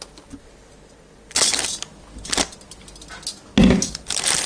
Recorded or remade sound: recorded